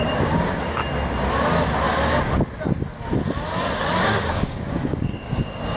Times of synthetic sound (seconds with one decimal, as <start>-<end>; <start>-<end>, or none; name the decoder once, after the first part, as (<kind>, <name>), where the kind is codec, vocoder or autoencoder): 0.0-0.8 (codec, DAC); 4.0-5.8